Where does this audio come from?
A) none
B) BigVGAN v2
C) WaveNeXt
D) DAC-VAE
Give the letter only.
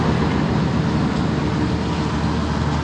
A